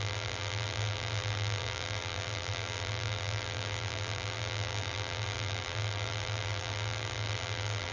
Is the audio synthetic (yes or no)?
yes